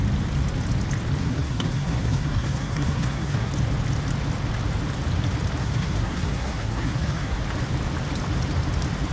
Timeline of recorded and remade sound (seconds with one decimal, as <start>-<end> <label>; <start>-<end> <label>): 0.0-1.2 recorded; 1.2-3.5 remade; 3.5-5.6 recorded; 5.6-7.4 remade; 7.4-9.1 recorded